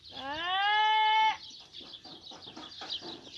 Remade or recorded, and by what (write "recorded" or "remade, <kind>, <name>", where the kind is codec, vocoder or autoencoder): recorded